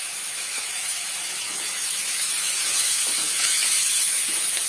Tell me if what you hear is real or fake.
fake